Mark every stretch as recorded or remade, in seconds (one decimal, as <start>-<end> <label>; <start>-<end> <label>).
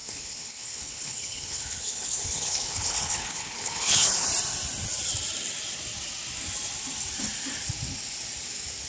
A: 0.0-4.3 remade; 4.3-8.9 recorded